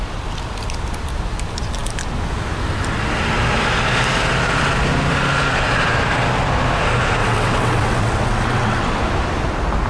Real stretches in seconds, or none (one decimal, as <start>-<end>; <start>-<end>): 0.0-7.2; 9.0-9.9